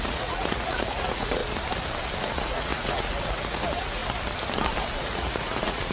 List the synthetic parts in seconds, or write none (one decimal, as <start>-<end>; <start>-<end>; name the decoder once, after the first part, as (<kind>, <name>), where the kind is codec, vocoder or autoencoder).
0.0-1.4 (vocoder, Vocos); 2.2-4.0; 5.0-5.9